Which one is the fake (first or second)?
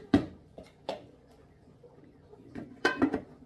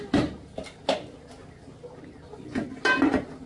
first